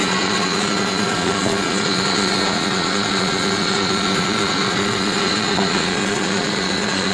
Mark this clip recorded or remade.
remade